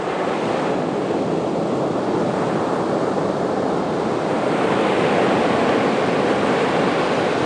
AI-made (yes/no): no